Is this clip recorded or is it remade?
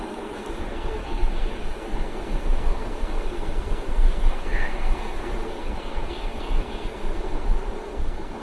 remade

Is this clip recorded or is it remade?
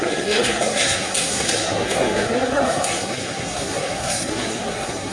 remade